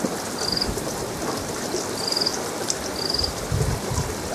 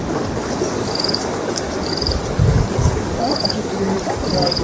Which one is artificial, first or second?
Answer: second